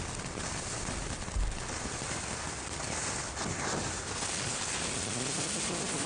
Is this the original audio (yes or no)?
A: yes